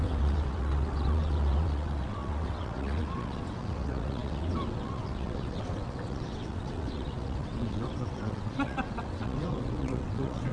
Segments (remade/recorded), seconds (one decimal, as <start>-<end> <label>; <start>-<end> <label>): 0.0-10.5 remade